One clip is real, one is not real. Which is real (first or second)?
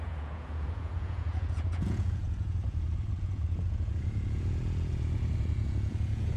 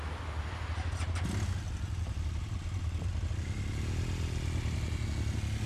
second